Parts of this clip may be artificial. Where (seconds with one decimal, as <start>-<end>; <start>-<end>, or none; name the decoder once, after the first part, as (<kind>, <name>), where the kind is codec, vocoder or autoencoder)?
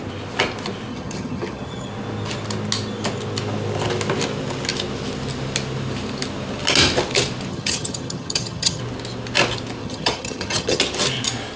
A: 0.9-1.9 (vocoder, HiFi-GAN); 7.5-8.8; 9.8-10.8